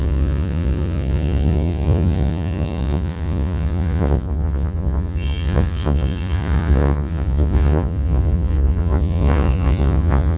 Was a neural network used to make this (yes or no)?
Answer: yes